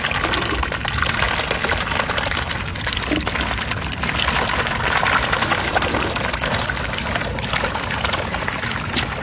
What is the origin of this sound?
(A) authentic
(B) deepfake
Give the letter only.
A